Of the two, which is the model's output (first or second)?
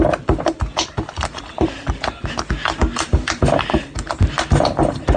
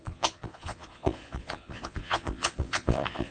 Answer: second